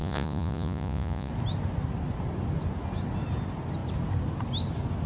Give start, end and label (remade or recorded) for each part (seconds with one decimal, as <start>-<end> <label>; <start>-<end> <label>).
0.0-1.3 remade; 1.3-5.1 recorded